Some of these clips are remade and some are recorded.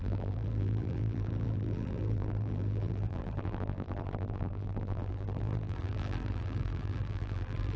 remade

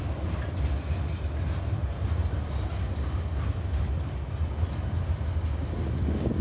recorded